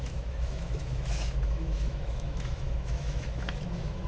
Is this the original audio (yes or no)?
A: no